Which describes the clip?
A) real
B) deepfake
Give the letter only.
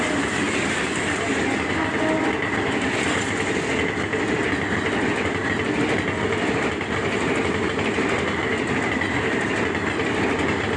A